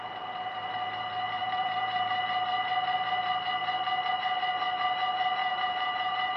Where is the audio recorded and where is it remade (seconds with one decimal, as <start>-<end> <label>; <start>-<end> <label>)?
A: 0.0-1.4 recorded; 1.4-2.2 remade; 2.2-5.4 recorded; 5.4-6.4 remade